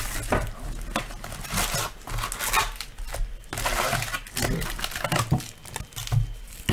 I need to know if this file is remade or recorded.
recorded